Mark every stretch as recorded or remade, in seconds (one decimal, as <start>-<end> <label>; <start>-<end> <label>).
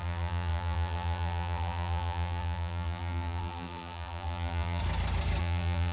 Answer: 0.0-4.8 remade; 4.8-5.4 recorded; 5.4-5.9 remade